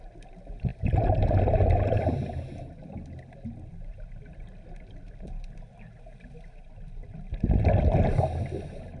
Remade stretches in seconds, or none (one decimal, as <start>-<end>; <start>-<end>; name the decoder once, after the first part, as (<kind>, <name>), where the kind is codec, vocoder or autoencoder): none